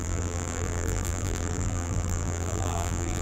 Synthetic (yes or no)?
yes